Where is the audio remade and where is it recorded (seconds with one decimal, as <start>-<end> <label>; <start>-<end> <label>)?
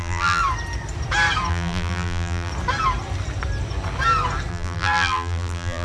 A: 0.0-0.4 remade; 0.4-1.5 recorded; 1.5-2.5 remade; 2.5-4.5 recorded; 4.5-5.8 remade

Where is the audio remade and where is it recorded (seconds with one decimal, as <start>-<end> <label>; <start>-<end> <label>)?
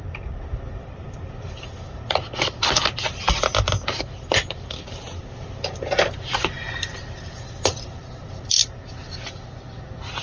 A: 0.0-10.2 recorded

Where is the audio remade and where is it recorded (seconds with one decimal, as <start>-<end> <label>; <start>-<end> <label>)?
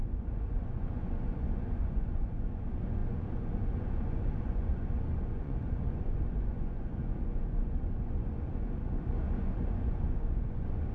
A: 0.0-10.9 remade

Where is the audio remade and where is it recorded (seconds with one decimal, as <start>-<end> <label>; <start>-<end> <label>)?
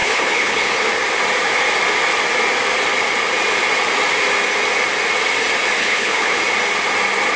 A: 0.0-0.9 remade; 0.9-5.8 recorded; 5.8-6.4 remade; 6.4-7.4 recorded